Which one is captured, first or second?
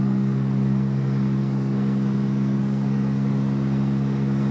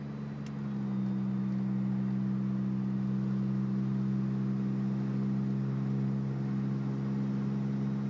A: second